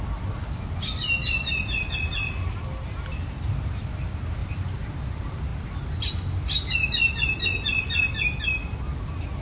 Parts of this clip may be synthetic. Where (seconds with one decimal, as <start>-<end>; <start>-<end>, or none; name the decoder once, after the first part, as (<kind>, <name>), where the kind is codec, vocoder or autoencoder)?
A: 1.2-3.3 (vocoder, BigVGAN v2); 4.4-4.9